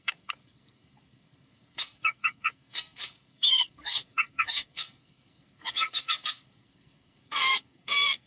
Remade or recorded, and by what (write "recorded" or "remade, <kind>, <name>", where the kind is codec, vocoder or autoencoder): remade, codec, SNAC